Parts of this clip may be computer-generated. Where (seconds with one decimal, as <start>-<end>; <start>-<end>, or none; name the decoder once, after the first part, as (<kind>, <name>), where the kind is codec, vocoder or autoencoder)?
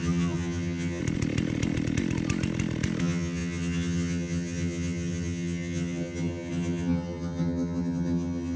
0.0-1.0 (vocoder, HiFi-GAN); 3.0-8.6